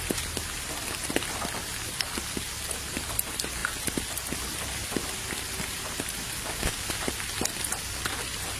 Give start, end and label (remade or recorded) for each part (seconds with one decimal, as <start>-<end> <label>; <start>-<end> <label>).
0.0-8.6 recorded

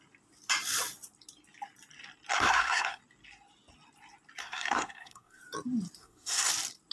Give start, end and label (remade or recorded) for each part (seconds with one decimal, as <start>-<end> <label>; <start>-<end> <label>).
0.0-2.3 recorded; 2.3-3.0 remade; 3.0-4.4 recorded; 4.4-5.4 remade; 5.4-6.0 recorded; 6.0-6.5 remade; 6.5-6.9 recorded

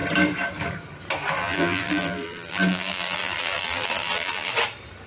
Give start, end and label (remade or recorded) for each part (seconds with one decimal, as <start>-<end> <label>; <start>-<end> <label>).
0.0-1.4 recorded; 1.4-4.5 remade; 4.5-5.1 recorded

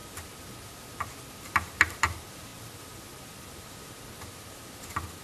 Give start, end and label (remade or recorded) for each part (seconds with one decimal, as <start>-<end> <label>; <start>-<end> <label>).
0.0-1.3 recorded; 1.3-2.5 remade; 2.5-3.4 recorded; 3.4-5.2 remade

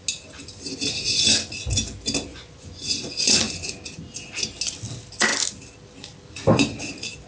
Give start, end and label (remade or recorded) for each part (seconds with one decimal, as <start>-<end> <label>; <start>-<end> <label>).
0.0-2.3 recorded; 2.3-3.7 remade; 3.7-7.3 recorded

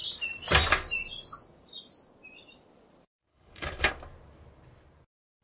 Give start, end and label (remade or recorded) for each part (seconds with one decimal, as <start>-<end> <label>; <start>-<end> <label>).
0.0-3.3 recorded; 3.3-3.9 remade; 3.9-5.4 recorded

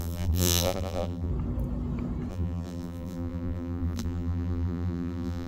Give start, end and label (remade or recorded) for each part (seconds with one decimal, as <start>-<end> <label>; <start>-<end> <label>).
0.0-1.3 remade; 1.3-2.3 recorded; 2.3-5.5 remade

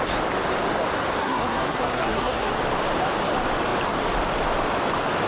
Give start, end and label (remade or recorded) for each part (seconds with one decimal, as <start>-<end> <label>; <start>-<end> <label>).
0.0-1.2 recorded; 1.2-2.5 remade; 2.5-5.3 recorded